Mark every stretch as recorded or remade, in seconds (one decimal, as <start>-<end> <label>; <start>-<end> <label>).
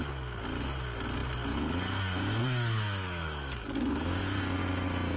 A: 0.0-2.4 recorded; 2.4-4.4 remade; 4.4-5.2 recorded